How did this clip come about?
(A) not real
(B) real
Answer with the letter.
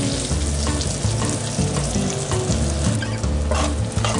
B